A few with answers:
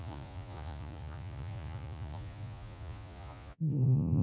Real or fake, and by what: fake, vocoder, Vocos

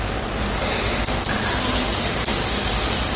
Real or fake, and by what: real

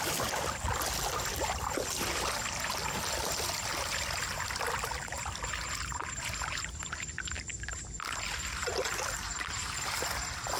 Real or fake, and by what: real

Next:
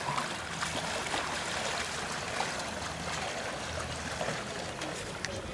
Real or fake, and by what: real